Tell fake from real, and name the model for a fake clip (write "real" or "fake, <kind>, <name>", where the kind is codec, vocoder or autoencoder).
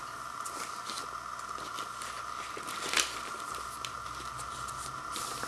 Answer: real